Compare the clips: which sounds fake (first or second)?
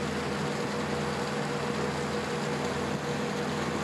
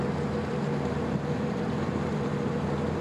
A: second